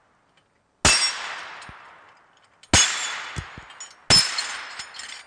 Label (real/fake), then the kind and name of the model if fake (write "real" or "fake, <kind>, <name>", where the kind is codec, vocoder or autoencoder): real